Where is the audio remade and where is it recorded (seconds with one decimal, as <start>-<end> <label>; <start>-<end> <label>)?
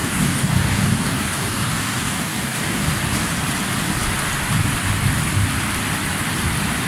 0.0-2.9 remade; 2.9-6.9 recorded